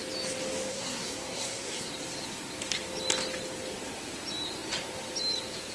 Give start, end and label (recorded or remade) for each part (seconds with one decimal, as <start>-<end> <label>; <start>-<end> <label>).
0.0-0.7 recorded; 0.7-1.9 remade; 1.9-5.7 recorded